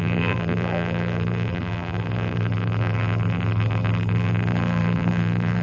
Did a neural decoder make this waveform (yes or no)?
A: yes